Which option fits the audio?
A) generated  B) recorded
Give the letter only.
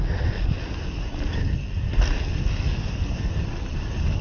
B